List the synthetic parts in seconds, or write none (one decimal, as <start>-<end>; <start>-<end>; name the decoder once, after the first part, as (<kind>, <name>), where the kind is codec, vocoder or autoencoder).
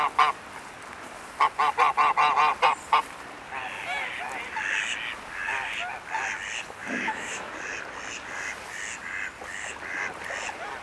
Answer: 6.8-7.5 (autoencoder, DAC-VAE)